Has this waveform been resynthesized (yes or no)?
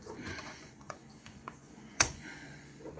yes